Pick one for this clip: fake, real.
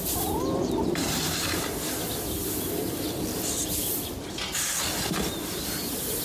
real